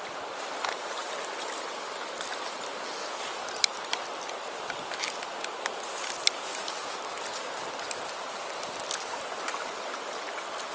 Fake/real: real